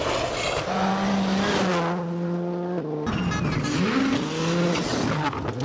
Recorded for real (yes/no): yes